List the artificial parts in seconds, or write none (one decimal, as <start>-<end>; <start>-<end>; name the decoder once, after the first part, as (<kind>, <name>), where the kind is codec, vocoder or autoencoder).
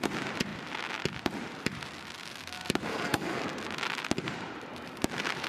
2.9-3.4 (codec, SNAC)